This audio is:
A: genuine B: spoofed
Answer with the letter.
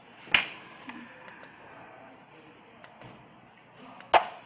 A